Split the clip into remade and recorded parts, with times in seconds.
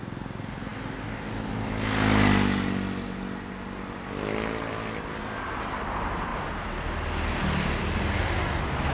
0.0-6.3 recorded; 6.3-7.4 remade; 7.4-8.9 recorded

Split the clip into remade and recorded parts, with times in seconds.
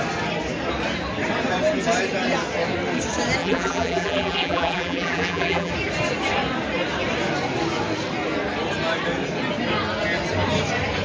0.0-3.4 recorded; 3.4-5.7 remade; 5.7-11.0 recorded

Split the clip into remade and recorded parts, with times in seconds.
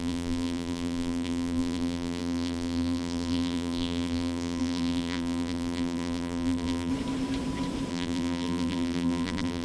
0.0-6.9 remade; 6.9-7.9 recorded; 7.9-9.6 remade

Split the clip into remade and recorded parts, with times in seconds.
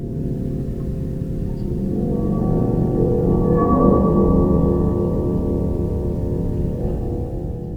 0.0-0.9 remade; 0.9-2.6 recorded; 2.6-7.0 remade; 7.0-7.8 recorded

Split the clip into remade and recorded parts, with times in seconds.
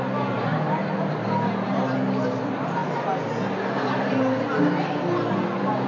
0.0-0.5 recorded; 0.5-1.1 remade; 1.1-2.8 recorded; 2.8-4.1 remade; 4.1-5.9 recorded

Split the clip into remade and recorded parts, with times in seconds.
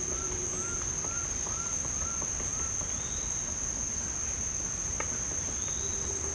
0.0-6.3 recorded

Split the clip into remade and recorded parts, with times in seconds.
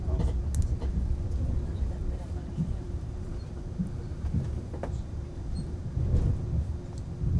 0.0-2.0 recorded; 2.0-5.8 remade; 5.8-7.4 recorded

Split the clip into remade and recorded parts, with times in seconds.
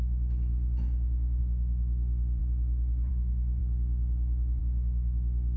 0.0-5.6 recorded